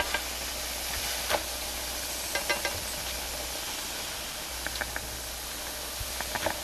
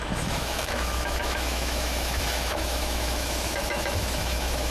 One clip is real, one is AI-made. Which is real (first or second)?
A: first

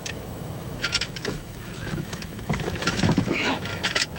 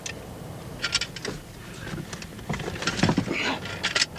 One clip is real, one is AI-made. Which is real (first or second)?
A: second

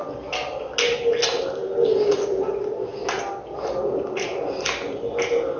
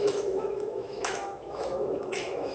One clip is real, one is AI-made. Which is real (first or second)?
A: first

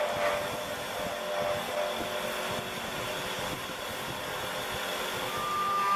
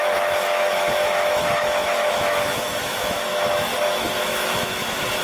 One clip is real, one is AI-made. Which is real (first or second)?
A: first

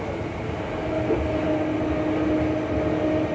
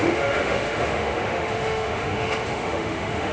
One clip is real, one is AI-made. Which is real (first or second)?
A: first